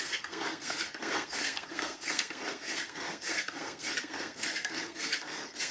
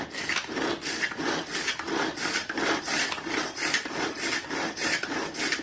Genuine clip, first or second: second